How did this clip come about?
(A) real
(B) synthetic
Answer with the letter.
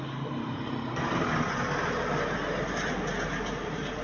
A